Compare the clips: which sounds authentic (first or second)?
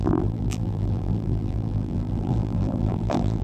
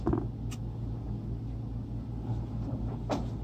second